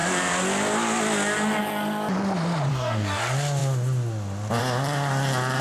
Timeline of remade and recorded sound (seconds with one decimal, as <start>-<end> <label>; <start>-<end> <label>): 0.0-2.7 recorded; 2.7-3.2 remade; 3.2-5.6 recorded